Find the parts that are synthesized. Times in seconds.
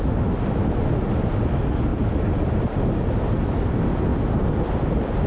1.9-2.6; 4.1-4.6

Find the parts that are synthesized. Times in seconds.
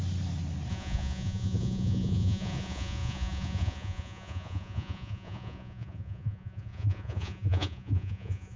0.7-8.6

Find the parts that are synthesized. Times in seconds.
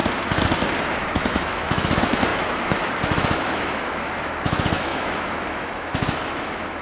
1.1-6.8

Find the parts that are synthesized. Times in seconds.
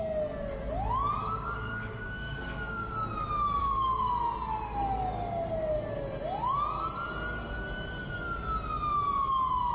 1.2-2.9; 3.6-4.1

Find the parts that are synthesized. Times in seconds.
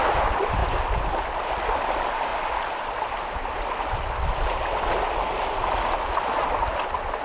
none